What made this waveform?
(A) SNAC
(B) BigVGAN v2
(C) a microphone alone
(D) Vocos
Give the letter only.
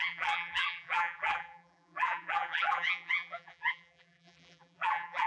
B